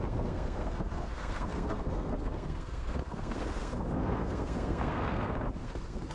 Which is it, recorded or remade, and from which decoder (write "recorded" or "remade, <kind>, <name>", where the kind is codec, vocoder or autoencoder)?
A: remade, codec, SNAC